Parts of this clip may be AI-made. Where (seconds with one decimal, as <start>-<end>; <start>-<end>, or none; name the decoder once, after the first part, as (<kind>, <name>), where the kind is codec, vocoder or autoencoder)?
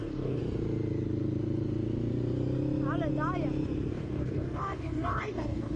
0.0-0.4 (codec, DAC); 3.9-5.8